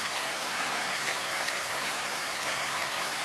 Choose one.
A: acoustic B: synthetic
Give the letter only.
B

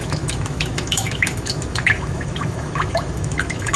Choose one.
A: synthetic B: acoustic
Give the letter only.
A